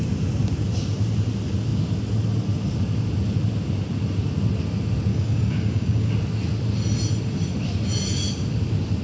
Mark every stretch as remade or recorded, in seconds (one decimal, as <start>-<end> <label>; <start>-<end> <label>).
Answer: 0.0-5.1 recorded; 5.1-6.1 remade; 6.1-9.0 recorded